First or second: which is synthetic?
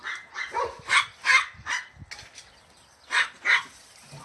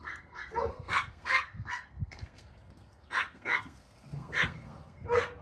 second